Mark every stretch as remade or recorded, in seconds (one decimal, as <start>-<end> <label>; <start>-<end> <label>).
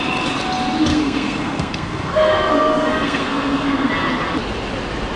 0.0-0.9 recorded; 0.9-3.9 remade; 3.9-5.2 recorded